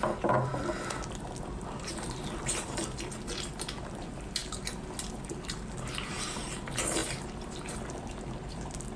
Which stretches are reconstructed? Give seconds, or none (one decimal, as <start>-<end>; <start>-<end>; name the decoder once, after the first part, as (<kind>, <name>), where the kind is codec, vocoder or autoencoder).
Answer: none